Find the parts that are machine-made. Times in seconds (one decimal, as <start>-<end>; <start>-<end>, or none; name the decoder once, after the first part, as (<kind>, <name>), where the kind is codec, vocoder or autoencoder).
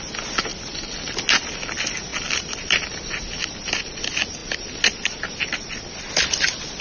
2.1-3.8 (vocoder, BigVGAN v2); 4.4-6.1